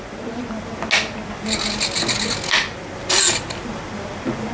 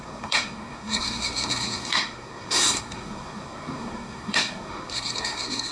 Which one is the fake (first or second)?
second